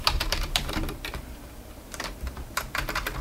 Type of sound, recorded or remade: remade